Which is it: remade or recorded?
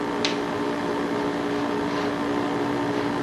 recorded